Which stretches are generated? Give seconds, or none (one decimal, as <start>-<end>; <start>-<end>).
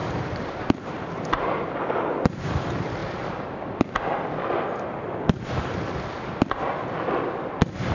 0.0-0.6